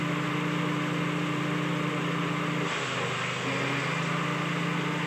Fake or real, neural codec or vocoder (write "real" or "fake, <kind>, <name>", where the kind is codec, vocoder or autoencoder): real